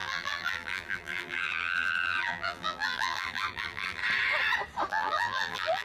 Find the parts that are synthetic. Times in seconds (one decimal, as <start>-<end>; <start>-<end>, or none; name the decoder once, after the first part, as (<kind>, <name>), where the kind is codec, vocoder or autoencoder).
0.0-4.0 (vocoder, BigVGAN v2); 4.9-5.8